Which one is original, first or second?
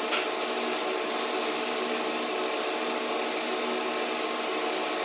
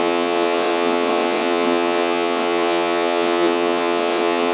first